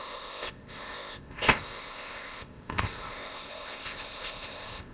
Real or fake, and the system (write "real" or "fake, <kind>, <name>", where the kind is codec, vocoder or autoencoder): fake, codec, ZipCodec